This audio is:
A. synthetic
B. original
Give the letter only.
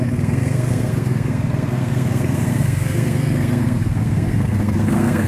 A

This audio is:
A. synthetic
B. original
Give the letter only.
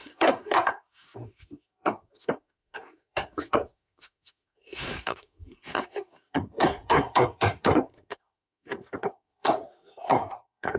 A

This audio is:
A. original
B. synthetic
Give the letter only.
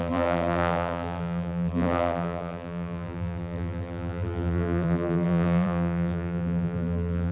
B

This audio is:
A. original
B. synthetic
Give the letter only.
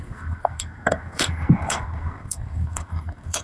B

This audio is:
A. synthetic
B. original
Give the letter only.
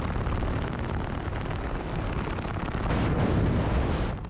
B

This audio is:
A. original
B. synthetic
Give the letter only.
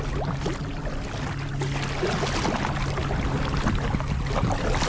A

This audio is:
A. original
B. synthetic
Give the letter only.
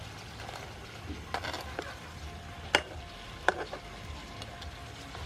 A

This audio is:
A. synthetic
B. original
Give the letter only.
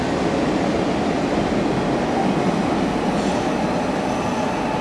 B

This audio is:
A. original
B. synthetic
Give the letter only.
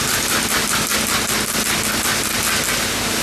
A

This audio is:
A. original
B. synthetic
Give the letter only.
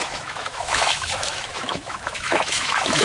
B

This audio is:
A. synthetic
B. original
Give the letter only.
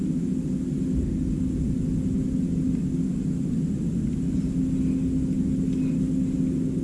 B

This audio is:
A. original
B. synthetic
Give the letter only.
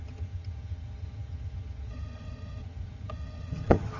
B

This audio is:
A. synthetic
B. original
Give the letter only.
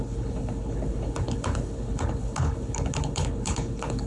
A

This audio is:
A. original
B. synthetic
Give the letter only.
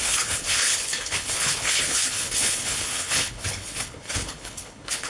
B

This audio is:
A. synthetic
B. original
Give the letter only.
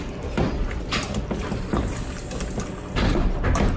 B